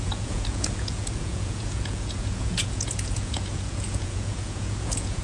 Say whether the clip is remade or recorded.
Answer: remade